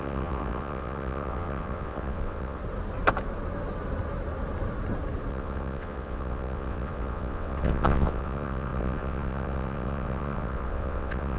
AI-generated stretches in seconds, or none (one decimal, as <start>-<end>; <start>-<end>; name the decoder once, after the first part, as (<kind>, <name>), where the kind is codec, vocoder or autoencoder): 0.0-2.6 (vocoder, WaveNeXt); 5.3-11.4